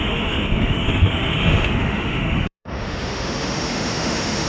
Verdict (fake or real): fake